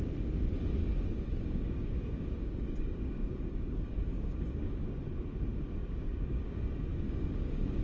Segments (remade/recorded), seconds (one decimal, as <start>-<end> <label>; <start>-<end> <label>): 0.0-0.8 recorded; 0.8-5.0 remade; 5.0-5.8 recorded; 5.8-6.4 remade; 6.4-6.9 recorded; 6.9-7.8 remade